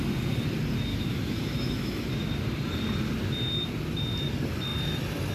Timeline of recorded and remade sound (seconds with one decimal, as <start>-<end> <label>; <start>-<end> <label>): 0.0-0.9 recorded; 0.9-2.3 remade; 2.3-5.3 recorded